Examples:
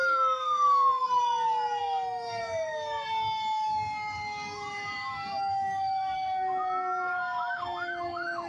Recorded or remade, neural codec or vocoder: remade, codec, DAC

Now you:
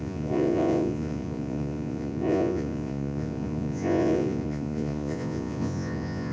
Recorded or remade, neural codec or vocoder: remade, vocoder, Vocos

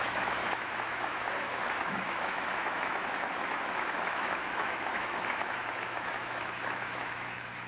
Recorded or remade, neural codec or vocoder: remade, autoencoder, DAC-VAE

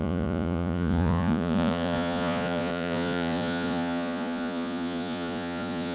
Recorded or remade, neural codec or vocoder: remade, vocoder, Vocos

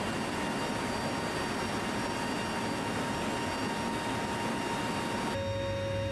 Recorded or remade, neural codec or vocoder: recorded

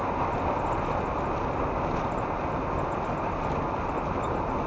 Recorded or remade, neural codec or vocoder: recorded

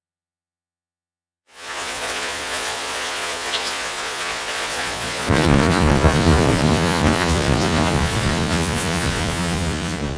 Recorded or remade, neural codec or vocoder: remade, vocoder, Vocos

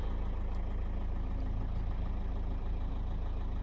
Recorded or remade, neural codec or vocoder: recorded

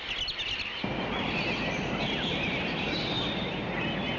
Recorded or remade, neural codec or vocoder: recorded